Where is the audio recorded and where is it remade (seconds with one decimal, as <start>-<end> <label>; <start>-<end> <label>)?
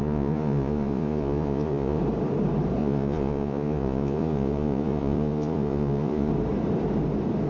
0.0-2.0 remade; 2.0-2.8 recorded; 2.8-6.3 remade; 6.3-7.5 recorded